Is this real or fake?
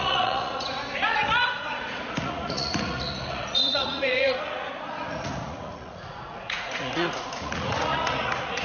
fake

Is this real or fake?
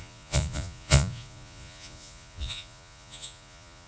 fake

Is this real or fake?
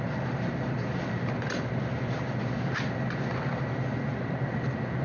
real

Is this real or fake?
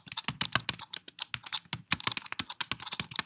real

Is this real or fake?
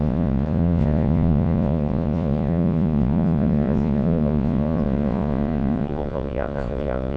fake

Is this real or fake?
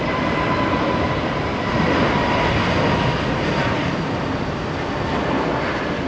real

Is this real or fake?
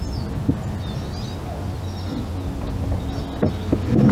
real